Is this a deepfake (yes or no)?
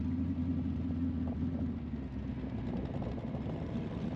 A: no